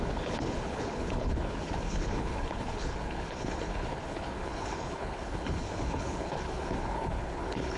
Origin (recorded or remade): remade